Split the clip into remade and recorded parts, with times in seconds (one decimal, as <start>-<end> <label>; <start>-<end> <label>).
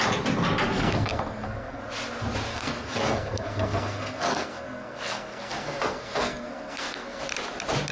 0.0-0.7 recorded; 0.7-1.8 remade; 1.8-2.5 recorded; 2.5-7.2 remade; 7.2-7.9 recorded